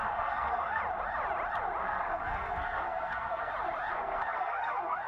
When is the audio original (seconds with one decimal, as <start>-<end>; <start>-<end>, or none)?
0.8-1.8; 3.5-3.9

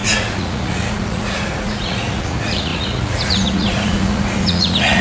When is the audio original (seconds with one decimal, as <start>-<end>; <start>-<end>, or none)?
none

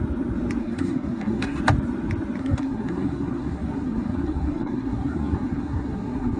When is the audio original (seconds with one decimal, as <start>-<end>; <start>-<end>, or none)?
0.0-0.6; 1.6-2.4